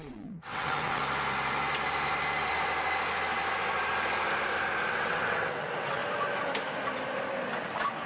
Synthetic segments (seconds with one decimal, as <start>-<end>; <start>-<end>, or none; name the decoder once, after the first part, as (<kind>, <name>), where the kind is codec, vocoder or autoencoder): 0.0-1.0 (vocoder, WaveNeXt); 4.9-6.0; 7.6-8.1